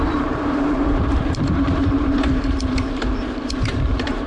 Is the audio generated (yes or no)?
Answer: yes